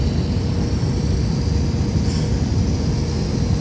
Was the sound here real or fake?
real